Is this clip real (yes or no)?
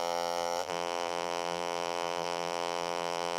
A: no